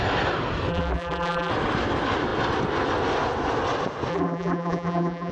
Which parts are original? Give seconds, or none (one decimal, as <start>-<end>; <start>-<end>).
0.0-0.7; 1.5-4.1